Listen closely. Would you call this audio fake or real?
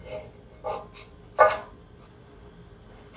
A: real